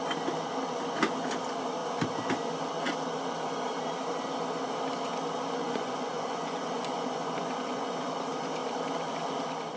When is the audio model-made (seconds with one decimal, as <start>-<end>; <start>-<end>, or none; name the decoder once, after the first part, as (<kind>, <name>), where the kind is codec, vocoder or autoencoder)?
5.6-8.1 (vocoder, Vocos)